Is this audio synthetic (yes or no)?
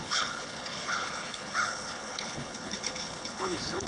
yes